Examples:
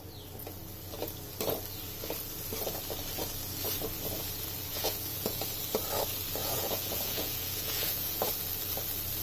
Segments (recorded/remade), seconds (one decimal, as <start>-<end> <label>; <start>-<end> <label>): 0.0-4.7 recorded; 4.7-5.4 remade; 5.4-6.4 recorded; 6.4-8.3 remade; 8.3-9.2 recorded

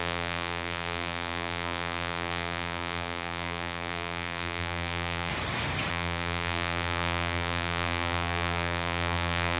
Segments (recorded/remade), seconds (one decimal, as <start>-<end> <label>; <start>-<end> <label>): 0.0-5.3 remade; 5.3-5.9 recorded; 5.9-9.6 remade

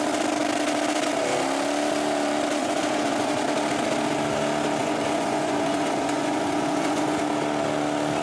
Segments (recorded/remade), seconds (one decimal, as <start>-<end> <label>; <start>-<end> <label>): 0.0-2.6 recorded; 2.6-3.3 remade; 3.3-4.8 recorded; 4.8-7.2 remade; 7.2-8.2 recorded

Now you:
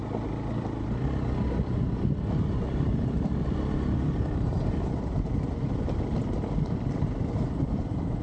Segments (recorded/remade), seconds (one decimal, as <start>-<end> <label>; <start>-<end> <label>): 0.0-8.2 recorded